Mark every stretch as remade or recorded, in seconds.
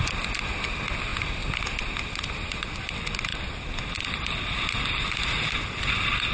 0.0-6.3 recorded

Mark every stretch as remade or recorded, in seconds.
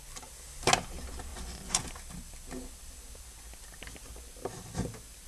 0.0-1.3 recorded; 1.3-1.9 remade; 1.9-5.3 recorded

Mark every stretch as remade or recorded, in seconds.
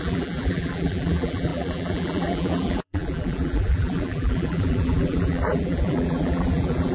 0.0-6.9 remade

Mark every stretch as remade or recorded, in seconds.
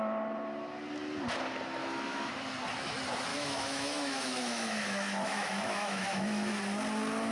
0.0-1.8 recorded; 1.8-2.3 remade; 2.3-3.3 recorded; 3.3-6.5 remade; 6.5-7.3 recorded